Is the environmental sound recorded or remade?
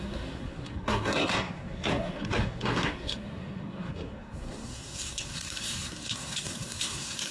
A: remade